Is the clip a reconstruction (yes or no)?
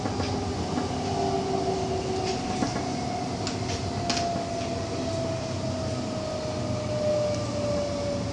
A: no